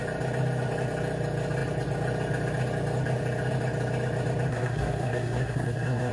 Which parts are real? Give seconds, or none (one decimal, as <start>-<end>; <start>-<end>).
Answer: 0.0-4.5